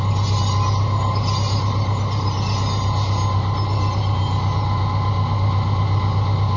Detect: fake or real real